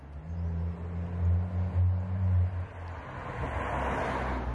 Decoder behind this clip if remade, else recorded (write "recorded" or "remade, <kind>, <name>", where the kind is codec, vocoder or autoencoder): recorded